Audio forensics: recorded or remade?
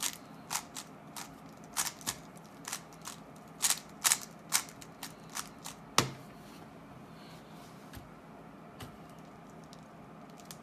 recorded